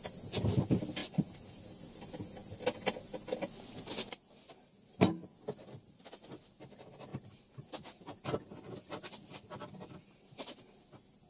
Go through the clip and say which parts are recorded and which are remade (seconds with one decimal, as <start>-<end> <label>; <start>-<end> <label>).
0.0-1.0 recorded; 1.0-1.8 remade; 1.8-7.1 recorded; 7.1-8.1 remade; 8.1-10.0 recorded; 10.0-10.6 remade; 10.6-11.3 recorded